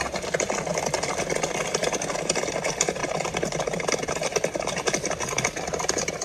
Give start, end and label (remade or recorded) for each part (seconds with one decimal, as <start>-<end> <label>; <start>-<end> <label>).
0.0-6.2 recorded